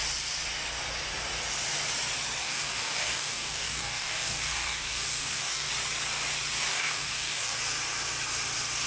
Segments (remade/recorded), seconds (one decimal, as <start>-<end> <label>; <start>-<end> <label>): 0.0-2.4 recorded; 2.4-5.7 remade; 5.7-6.7 recorded; 6.7-7.6 remade; 7.6-8.9 recorded